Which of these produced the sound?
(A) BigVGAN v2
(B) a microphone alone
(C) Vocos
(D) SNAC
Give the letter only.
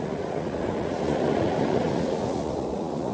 C